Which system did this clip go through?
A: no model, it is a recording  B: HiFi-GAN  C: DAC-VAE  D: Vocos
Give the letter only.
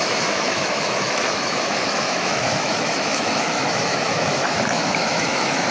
C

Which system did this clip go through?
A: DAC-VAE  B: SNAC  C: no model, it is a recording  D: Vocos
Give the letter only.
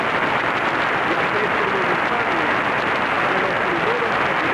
C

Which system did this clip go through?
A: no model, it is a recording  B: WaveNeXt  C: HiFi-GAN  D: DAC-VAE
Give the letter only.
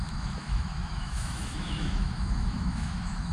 D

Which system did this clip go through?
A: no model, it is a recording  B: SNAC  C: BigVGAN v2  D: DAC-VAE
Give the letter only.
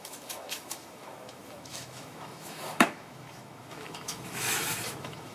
D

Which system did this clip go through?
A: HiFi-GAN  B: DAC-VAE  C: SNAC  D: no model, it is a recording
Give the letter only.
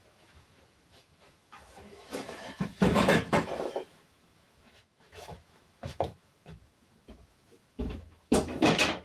B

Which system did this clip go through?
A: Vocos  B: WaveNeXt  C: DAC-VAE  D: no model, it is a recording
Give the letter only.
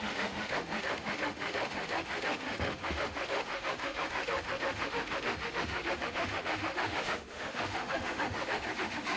C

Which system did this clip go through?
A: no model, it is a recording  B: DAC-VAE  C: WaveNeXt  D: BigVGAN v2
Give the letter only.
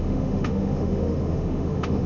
B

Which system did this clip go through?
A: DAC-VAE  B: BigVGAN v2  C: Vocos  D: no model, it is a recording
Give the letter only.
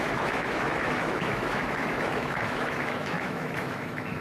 A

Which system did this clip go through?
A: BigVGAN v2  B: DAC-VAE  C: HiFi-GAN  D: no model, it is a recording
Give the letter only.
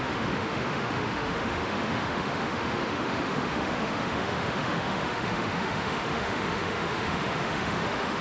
B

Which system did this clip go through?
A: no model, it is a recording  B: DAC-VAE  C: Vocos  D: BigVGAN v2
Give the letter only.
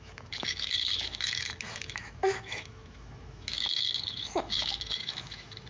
B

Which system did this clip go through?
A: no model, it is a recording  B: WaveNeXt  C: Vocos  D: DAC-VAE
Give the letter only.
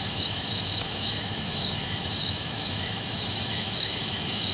D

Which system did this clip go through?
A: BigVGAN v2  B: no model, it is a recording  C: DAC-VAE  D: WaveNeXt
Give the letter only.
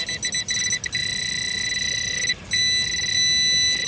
B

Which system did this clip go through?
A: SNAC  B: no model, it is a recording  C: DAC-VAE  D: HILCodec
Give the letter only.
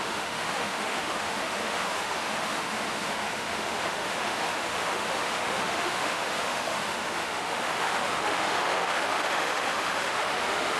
C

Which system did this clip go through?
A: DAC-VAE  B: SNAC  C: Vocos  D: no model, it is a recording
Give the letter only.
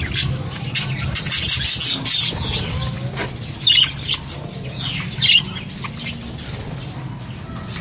D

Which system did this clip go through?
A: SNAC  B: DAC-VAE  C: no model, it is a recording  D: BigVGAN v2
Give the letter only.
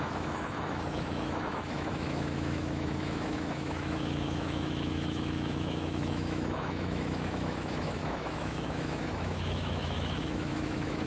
B